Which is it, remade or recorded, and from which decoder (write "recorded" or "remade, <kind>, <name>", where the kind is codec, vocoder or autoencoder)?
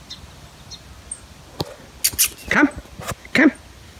recorded